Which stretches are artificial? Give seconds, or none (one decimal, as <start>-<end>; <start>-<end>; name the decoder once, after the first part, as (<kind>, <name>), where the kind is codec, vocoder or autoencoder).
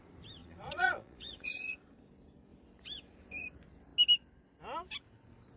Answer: 0.4-2.1 (vocoder, Vocos)